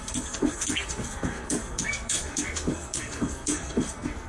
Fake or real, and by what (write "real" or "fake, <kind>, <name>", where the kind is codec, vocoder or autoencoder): fake, codec, SNAC